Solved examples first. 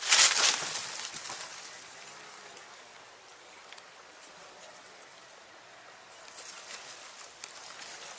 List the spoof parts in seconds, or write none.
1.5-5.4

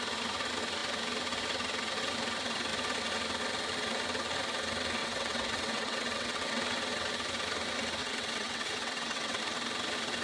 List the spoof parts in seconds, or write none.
5.0-6.6; 8.0-9.4

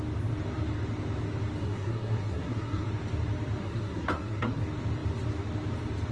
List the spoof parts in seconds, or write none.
1.6-2.9; 3.6-4.6

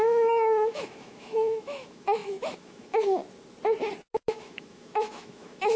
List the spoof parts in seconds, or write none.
0.0-3.2; 4.1-5.8

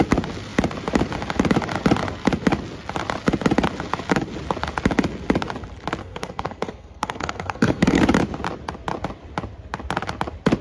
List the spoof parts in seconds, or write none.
6.0-8.0

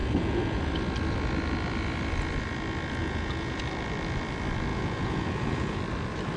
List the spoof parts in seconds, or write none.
0.0-0.6; 3.0-3.6; 4.7-5.8

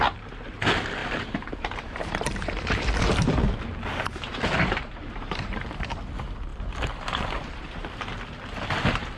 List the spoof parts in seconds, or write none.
1.0-5.9; 6.5-7.9